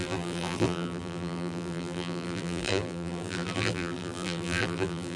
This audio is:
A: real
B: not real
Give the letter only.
B